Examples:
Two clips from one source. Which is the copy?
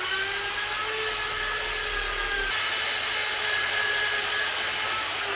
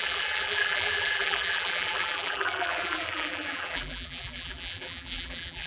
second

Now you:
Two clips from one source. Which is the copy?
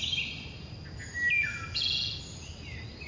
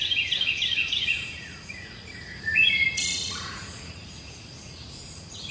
second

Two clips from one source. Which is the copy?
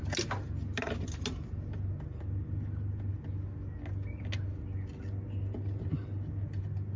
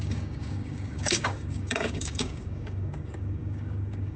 second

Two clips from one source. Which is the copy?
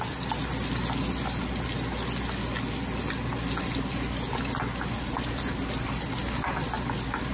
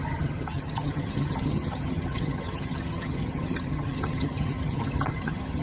second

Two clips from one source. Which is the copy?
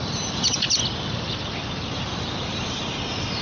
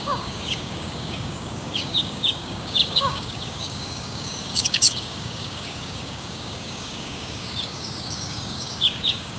second